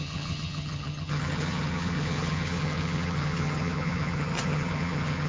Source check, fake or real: fake